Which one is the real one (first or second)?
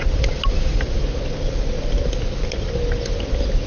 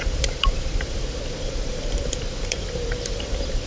first